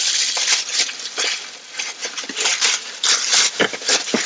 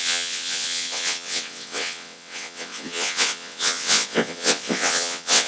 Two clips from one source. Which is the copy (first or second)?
second